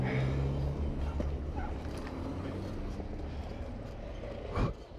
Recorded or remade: recorded